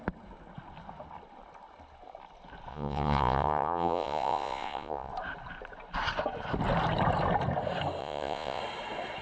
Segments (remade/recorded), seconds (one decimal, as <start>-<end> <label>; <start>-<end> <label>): 0.0-2.7 recorded; 2.7-5.1 remade; 5.1-8.0 recorded; 8.0-8.6 remade; 8.6-9.2 recorded

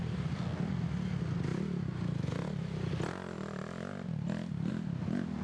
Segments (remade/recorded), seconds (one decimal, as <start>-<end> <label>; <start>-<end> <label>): 0.0-5.4 recorded

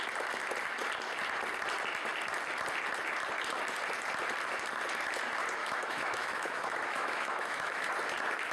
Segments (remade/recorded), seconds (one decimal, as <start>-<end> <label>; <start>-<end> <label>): 0.0-5.6 recorded; 5.6-7.9 remade; 7.9-8.5 recorded

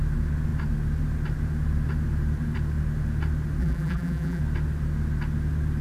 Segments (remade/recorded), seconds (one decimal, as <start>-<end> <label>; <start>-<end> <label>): 0.0-3.6 recorded; 3.6-4.4 remade; 4.4-5.8 recorded

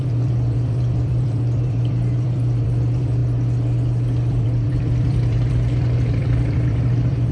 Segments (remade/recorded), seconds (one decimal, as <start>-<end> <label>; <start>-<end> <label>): 0.0-3.2 remade; 3.2-4.3 recorded; 4.3-7.3 remade

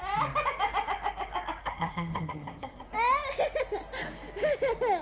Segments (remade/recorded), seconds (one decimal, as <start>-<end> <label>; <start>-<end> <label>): 0.0-1.6 recorded; 1.6-2.9 remade; 2.9-5.0 recorded

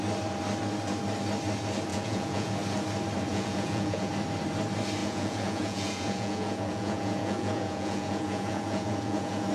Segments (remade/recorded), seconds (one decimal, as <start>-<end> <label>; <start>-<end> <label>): 0.0-1.9 recorded; 1.9-2.5 remade; 2.5-3.3 recorded; 3.3-4.1 remade; 4.1-5.0 recorded; 5.0-9.5 remade

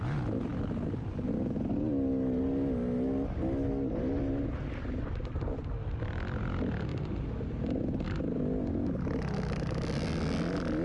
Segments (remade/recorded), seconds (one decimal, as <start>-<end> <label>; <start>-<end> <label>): 0.0-10.8 recorded